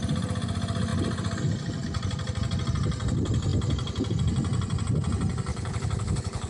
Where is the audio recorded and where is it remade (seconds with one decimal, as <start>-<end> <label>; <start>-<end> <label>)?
0.0-5.5 recorded; 5.5-6.5 remade